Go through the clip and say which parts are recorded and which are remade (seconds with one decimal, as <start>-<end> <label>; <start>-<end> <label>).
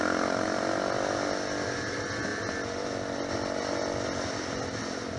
0.0-5.2 recorded